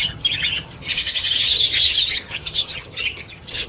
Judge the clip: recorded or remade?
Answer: remade